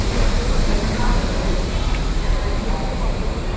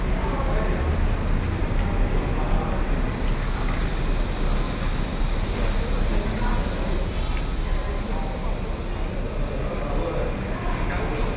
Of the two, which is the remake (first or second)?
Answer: first